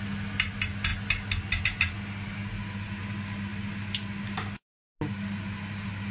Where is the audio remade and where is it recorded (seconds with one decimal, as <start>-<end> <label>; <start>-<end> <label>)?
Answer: 0.0-6.1 recorded